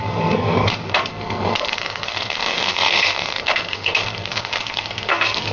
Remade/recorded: remade